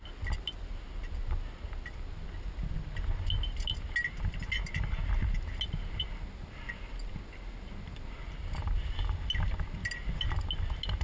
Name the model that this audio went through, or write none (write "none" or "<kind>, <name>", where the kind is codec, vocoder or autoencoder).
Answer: none